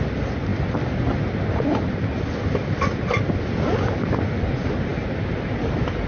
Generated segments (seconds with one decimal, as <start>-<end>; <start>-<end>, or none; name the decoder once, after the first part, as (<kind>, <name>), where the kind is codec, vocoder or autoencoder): none